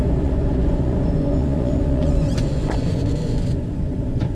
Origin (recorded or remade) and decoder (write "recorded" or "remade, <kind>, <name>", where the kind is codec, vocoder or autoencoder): remade, vocoder, Vocos